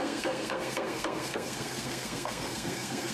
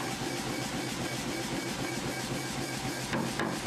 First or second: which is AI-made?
first